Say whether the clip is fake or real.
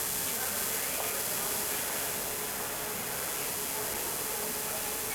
real